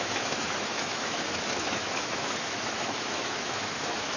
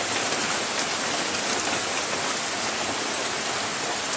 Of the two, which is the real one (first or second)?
second